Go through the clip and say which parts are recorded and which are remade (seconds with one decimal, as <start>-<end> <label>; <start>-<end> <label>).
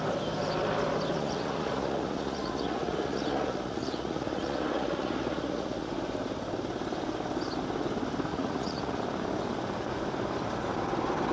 0.0-1.1 recorded; 1.1-5.9 remade; 5.9-8.3 recorded; 8.3-9.0 remade; 9.0-11.3 recorded